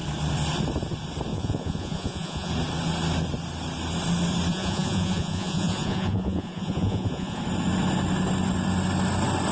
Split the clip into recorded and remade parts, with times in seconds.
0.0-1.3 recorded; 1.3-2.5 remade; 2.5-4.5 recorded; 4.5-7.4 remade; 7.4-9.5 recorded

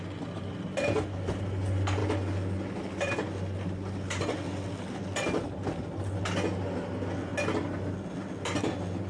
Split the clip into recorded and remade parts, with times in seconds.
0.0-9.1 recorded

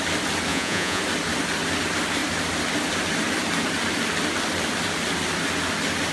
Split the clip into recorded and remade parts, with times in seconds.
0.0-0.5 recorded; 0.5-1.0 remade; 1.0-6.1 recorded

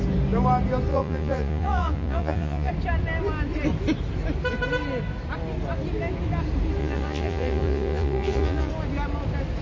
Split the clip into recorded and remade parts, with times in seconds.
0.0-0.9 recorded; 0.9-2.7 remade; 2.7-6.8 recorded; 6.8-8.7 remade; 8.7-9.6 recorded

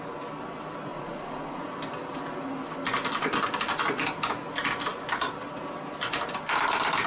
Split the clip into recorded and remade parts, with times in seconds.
0.0-0.9 recorded; 0.9-1.6 remade; 1.6-7.1 recorded

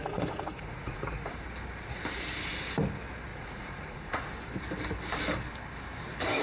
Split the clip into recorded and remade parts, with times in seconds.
0.0-1.3 remade; 1.3-3.3 recorded; 3.3-4.3 remade; 4.3-6.4 recorded

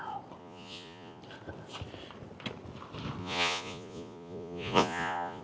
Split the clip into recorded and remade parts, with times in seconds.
0.0-0.4 recorded; 0.4-1.2 remade; 1.2-3.2 recorded; 3.2-5.4 remade